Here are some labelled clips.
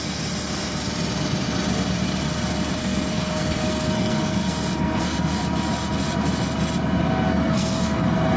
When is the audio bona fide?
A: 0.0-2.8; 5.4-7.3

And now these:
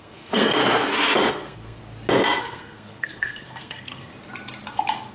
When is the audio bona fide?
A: 0.6-1.3; 1.8-2.4; 4.1-5.1

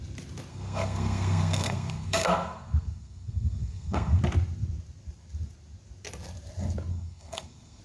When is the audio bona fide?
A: 0.0-0.5; 4.2-6.9

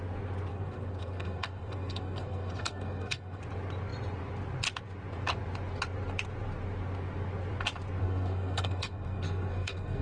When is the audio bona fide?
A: 0.0-0.5; 3.4-8.0

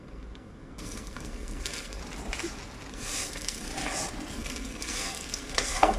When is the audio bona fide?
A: 2.0-2.9; 3.7-4.3

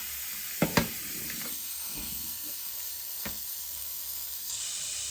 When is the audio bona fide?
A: 0.0-1.5; 4.6-5.1